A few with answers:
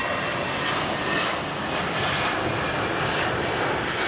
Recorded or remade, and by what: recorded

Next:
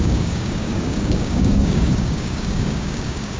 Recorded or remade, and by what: remade, codec, DAC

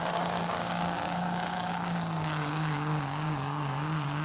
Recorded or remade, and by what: remade, codec, DAC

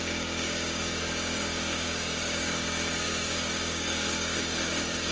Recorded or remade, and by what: remade, codec, DAC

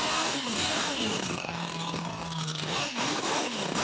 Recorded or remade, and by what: remade, codec, DAC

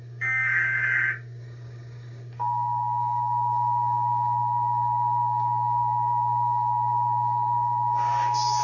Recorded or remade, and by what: remade, codec, DAC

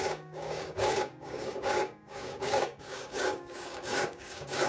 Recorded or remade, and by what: remade, codec, DAC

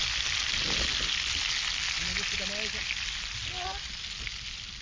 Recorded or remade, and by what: recorded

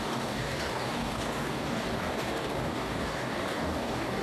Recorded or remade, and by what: remade, codec, DAC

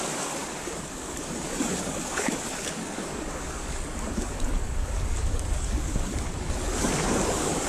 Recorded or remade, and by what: remade, codec, DAC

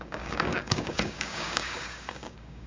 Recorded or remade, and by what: remade, codec, DAC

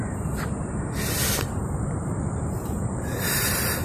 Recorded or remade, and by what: recorded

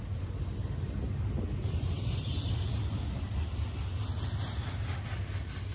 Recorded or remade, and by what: recorded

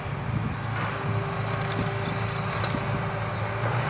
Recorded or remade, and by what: recorded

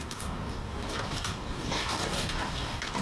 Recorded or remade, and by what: remade, codec, DAC